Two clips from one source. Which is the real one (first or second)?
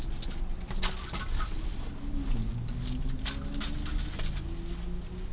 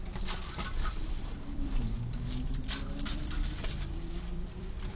first